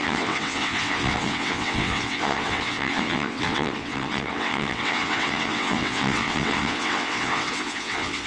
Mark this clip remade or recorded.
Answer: remade